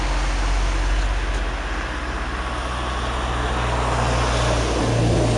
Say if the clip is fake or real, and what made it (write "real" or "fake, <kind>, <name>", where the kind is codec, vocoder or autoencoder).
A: real